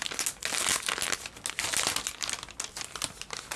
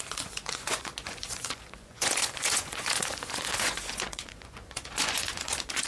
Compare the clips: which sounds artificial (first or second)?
second